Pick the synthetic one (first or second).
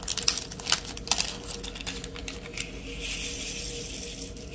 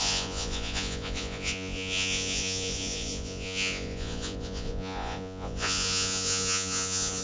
second